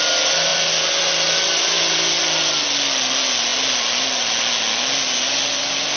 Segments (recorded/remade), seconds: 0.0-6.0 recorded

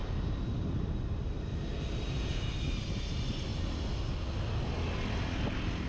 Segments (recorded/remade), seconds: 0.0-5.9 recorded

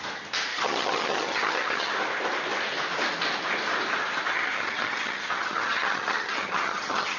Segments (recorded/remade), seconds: 0.0-0.5 recorded; 0.5-1.9 remade; 1.9-4.3 recorded; 4.3-7.2 remade